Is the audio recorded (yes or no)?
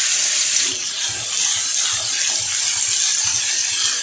yes